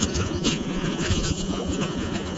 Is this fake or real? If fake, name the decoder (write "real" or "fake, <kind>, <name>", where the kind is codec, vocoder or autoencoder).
fake, vocoder, Vocos